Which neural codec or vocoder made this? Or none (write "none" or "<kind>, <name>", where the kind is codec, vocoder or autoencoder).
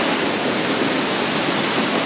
none